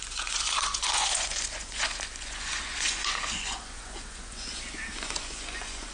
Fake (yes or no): yes